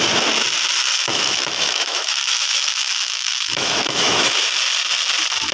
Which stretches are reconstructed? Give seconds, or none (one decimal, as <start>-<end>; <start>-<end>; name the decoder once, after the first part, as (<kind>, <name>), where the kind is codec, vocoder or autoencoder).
1.1-4.4 (autoencoder, DAC-VAE)